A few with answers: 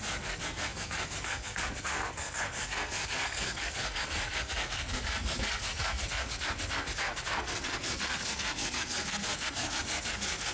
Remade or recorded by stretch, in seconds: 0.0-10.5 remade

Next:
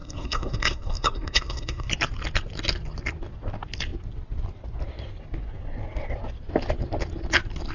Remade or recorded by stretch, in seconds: 0.0-1.9 remade; 1.9-7.7 recorded

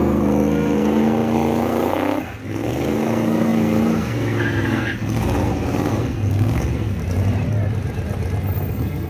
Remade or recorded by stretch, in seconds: 0.0-7.0 remade; 7.0-8.7 recorded; 8.7-9.1 remade

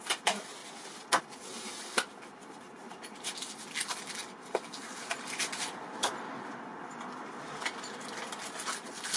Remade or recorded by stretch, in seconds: 0.0-9.2 recorded